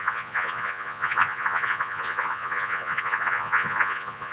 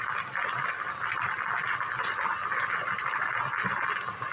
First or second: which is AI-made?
first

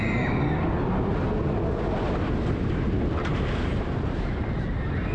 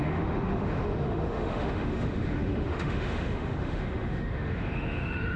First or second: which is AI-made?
second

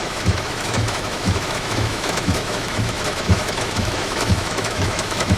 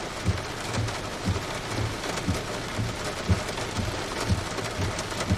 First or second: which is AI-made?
first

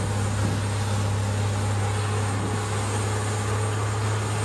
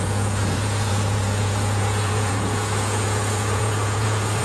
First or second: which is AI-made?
second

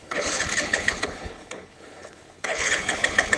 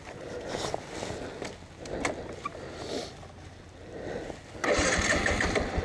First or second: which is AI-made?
first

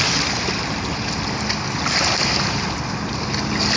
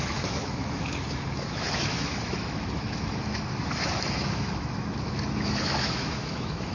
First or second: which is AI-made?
second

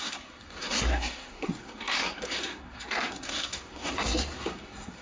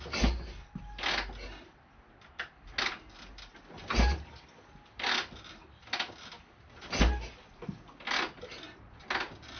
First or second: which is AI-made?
first